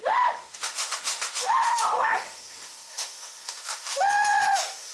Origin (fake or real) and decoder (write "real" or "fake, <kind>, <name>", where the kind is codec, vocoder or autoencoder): fake, autoencoder, DAC-VAE